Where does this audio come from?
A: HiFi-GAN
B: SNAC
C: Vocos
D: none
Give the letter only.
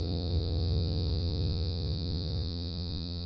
C